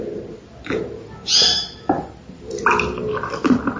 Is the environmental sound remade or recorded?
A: recorded